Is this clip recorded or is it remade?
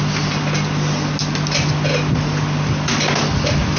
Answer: recorded